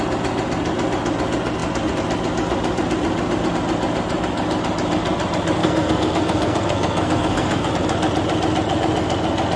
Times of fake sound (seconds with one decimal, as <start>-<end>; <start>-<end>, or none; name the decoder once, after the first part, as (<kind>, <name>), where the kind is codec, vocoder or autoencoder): 5.6-7.7 (codec, SNAC)